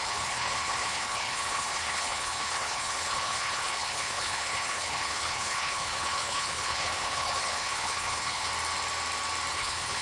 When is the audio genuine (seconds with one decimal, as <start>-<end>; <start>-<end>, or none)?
8.5-9.5